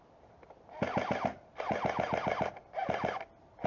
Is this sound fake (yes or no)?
no